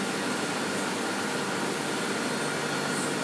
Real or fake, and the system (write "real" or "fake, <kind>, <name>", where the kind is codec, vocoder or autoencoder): real